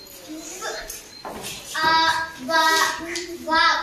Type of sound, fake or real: real